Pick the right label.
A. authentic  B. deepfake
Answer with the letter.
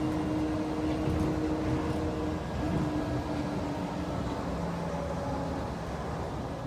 A